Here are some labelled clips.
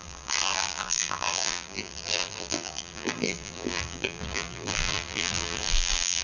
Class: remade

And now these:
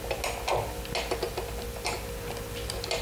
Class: recorded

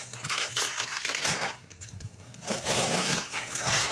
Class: remade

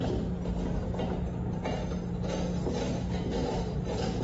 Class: recorded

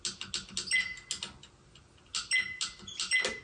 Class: recorded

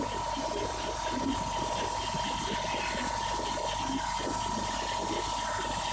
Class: recorded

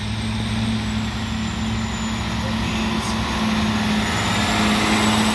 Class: recorded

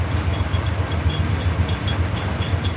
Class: recorded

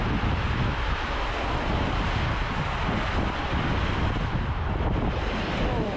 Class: remade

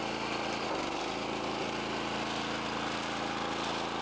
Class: recorded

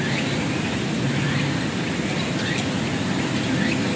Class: recorded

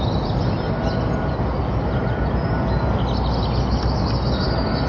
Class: recorded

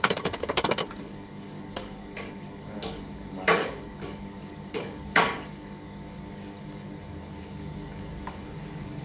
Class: remade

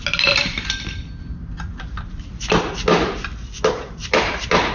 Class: remade